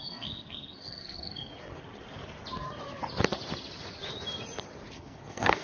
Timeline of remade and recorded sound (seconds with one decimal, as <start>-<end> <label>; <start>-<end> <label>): 0.0-1.5 remade; 1.5-4.9 recorded; 4.9-5.6 remade